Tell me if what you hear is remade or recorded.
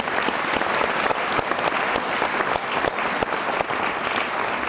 recorded